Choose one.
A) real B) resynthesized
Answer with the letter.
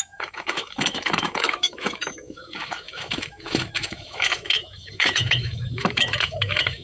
B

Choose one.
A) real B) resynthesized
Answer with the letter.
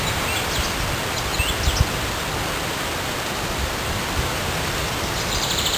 A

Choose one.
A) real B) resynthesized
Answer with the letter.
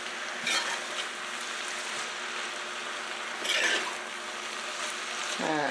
A